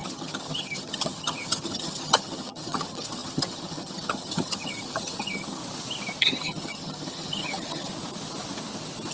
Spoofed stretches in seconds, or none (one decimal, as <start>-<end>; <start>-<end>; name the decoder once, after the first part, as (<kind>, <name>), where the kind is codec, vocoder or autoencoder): 0.0-5.6 (vocoder, HiFi-GAN); 6.2-7.9